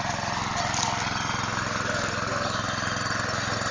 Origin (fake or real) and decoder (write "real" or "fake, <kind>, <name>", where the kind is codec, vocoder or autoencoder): real